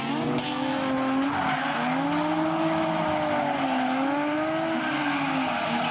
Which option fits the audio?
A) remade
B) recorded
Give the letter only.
B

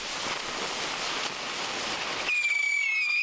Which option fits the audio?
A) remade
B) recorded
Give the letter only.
B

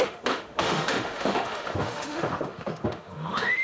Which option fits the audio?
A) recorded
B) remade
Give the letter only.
B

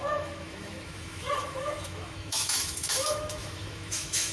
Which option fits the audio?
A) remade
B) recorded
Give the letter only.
A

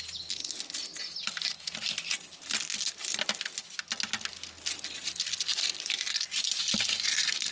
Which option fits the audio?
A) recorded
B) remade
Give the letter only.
A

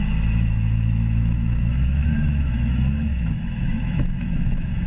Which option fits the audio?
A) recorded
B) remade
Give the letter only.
B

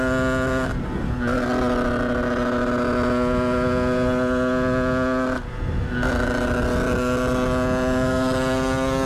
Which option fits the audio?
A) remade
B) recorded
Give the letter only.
B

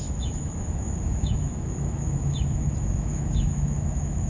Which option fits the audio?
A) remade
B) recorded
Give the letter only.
A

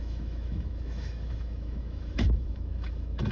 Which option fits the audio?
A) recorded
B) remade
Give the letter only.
B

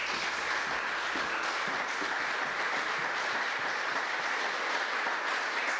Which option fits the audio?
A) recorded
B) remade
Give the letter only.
A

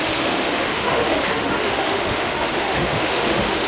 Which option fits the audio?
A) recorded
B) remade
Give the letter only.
B